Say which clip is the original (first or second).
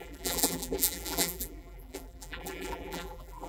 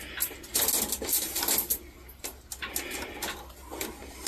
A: second